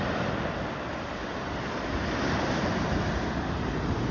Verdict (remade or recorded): recorded